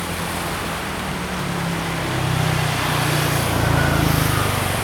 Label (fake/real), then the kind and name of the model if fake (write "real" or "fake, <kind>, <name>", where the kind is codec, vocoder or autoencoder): real